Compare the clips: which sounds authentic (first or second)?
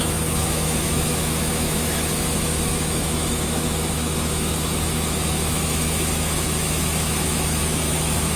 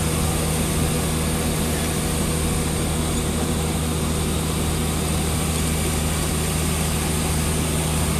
second